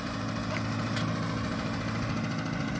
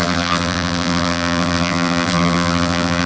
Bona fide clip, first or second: first